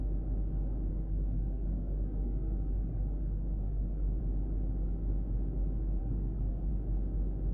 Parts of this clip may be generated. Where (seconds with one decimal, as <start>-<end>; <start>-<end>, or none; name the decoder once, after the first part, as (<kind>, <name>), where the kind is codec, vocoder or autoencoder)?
0.9-4.2 (codec, SNAC); 6.0-6.7